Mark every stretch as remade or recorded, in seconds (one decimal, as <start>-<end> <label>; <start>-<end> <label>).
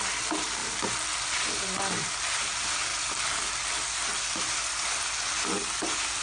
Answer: 0.0-6.2 recorded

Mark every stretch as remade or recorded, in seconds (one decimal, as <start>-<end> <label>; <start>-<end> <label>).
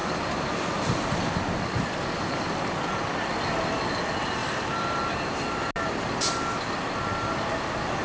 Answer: 0.0-1.9 remade; 1.9-4.4 recorded; 4.4-5.3 remade; 5.3-8.0 recorded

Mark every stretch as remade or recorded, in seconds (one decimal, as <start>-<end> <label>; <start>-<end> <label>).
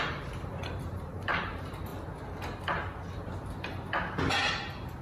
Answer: 0.0-1.9 remade; 1.9-5.0 recorded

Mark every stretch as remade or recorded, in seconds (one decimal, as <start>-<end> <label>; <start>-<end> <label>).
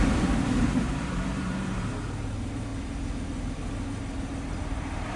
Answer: 0.0-2.7 remade; 2.7-4.6 recorded; 4.6-5.2 remade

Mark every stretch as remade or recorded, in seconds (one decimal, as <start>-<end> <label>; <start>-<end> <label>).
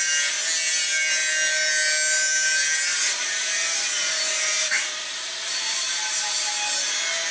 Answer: 0.0-2.9 recorded; 2.9-6.5 remade; 6.5-7.3 recorded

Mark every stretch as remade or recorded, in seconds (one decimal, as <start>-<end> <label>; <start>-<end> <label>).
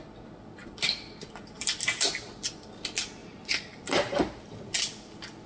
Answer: 0.0-3.2 recorded; 3.2-4.6 remade; 4.6-5.5 recorded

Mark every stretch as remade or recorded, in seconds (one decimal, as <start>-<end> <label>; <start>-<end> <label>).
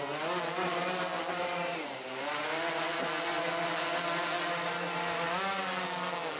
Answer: 0.0-1.3 recorded; 1.3-2.4 remade; 2.4-6.4 recorded